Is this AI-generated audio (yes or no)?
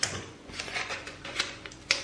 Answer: yes